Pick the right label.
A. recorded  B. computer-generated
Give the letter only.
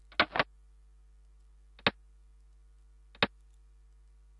A